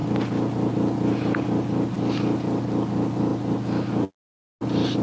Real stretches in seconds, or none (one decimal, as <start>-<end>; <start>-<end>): 0.0-5.0